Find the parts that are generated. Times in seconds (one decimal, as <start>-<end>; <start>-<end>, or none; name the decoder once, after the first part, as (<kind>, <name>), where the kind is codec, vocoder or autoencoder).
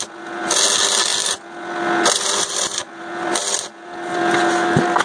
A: none